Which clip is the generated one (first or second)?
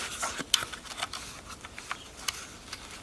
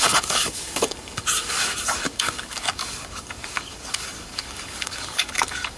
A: second